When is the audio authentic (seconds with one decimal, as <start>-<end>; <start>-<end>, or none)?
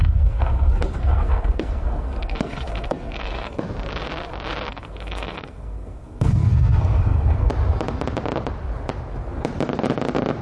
3.6-4.7; 7.5-10.4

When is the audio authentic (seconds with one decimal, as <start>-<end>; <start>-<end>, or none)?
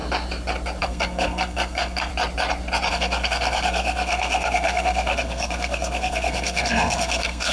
0.0-0.8; 2.1-2.9